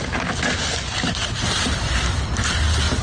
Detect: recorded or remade recorded